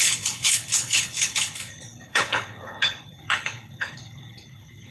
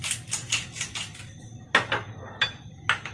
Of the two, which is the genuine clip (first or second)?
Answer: second